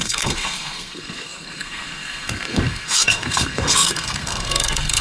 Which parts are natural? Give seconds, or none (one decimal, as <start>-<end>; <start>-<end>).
none